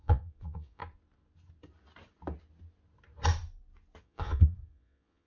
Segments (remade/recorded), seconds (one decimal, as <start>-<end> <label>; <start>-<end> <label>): 0.0-0.8 remade; 0.8-4.0 recorded; 4.0-5.3 remade